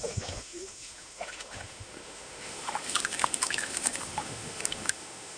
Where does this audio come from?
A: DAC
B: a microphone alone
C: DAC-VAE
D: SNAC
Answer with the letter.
C